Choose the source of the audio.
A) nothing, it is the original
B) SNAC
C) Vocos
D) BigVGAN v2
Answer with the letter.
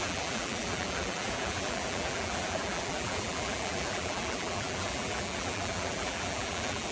D